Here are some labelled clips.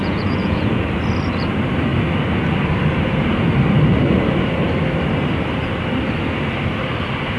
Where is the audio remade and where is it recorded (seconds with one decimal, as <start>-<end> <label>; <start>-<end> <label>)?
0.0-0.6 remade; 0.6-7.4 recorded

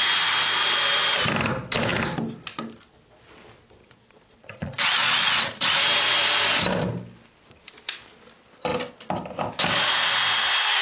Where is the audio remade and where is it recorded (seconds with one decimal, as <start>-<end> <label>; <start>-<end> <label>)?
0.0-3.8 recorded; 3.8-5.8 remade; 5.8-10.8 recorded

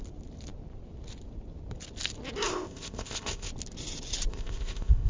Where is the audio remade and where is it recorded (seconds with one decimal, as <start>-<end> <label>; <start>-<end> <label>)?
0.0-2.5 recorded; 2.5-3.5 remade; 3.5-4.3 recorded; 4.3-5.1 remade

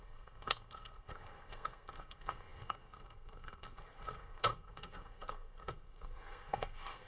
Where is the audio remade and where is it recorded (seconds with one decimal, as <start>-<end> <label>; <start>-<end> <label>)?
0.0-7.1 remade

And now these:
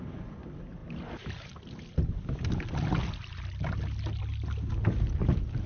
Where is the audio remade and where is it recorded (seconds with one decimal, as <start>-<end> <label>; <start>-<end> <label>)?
0.0-5.7 recorded

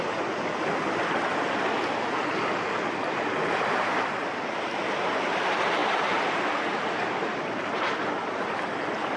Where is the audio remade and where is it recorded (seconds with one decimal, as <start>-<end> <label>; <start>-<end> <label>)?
0.0-9.2 recorded

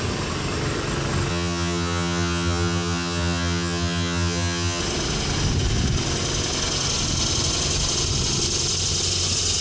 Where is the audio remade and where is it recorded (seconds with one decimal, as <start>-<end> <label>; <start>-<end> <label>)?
0.0-1.3 recorded; 1.3-4.8 remade; 4.8-9.6 recorded